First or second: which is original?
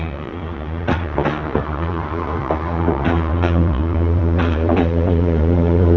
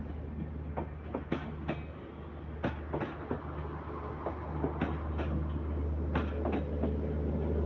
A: second